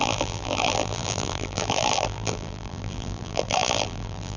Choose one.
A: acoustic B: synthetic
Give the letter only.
B